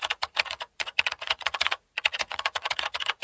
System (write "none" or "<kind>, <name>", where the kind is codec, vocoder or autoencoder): vocoder, Vocos